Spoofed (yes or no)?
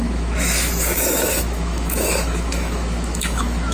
yes